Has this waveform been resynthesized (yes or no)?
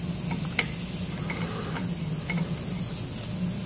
no